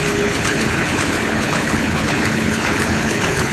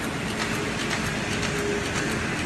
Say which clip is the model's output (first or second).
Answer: first